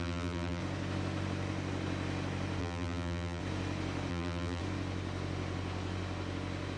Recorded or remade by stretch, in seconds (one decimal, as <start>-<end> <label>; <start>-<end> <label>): 0.0-0.6 remade; 0.6-2.6 recorded; 2.6-3.4 remade; 3.4-4.1 recorded; 4.1-4.6 remade; 4.6-6.8 recorded